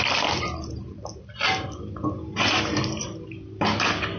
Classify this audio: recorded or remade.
recorded